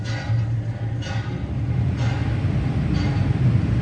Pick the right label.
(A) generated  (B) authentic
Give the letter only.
B